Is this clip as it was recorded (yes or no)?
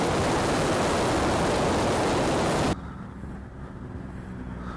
yes